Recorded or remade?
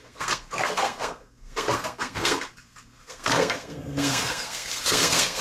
remade